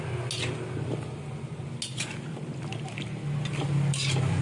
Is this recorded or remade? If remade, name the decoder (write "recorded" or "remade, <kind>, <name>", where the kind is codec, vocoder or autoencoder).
recorded